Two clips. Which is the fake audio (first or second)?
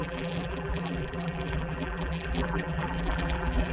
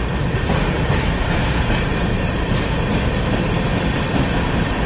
first